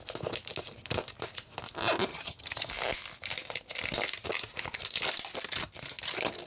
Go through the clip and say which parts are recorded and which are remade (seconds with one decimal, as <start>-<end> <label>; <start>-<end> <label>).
0.0-2.1 recorded; 2.1-2.7 remade; 2.7-6.5 recorded